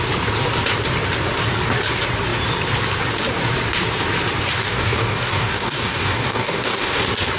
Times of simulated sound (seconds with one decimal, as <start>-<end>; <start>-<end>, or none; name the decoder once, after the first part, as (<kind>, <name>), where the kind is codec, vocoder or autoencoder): 4.5-7.0 (codec, DAC)